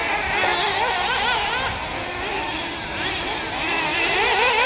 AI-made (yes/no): no